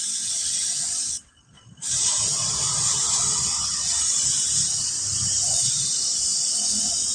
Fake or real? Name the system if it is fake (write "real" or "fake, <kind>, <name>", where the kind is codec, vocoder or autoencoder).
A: real